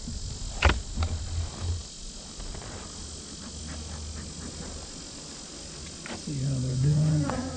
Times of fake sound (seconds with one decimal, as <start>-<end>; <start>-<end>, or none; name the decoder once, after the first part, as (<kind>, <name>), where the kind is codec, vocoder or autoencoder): 6.7-7.6 (vocoder, Vocos)